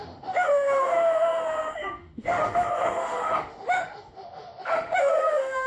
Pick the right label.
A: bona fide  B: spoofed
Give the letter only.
B